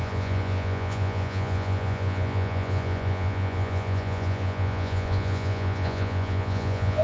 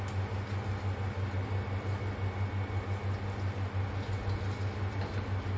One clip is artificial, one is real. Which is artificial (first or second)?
first